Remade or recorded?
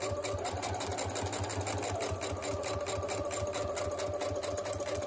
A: recorded